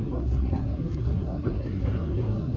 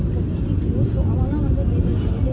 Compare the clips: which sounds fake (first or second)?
first